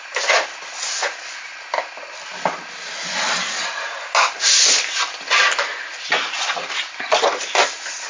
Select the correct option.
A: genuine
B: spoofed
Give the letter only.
A